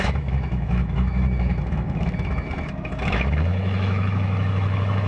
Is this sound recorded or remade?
remade